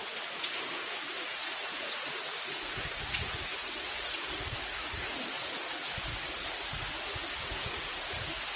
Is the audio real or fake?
fake